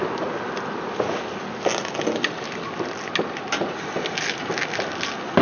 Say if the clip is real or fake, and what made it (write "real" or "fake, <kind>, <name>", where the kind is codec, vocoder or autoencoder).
real